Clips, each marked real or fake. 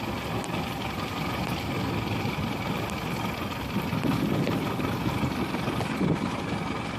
real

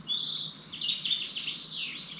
real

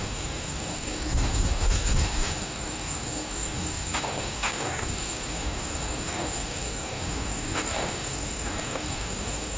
fake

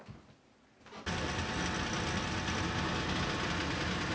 real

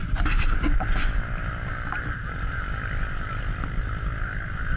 real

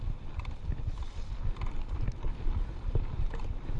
real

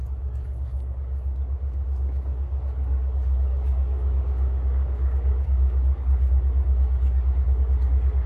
fake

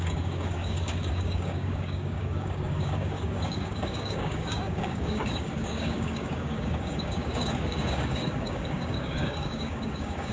fake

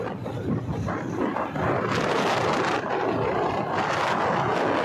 real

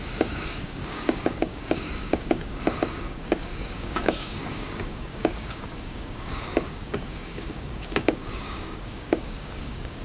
fake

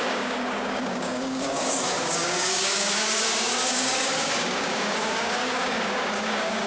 fake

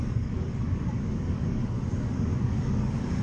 fake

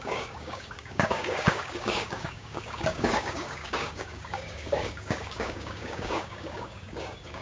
fake